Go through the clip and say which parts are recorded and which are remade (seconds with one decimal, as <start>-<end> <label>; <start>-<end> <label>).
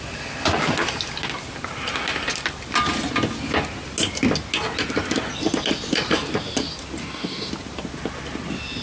0.0-7.0 recorded; 7.0-7.5 remade; 7.5-8.8 recorded